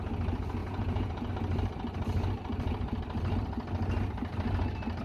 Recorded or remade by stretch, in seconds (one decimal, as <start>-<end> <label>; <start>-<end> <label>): 0.0-0.6 recorded; 0.6-1.3 remade; 1.3-5.0 recorded